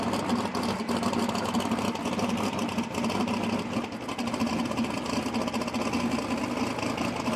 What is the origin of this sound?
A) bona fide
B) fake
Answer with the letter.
A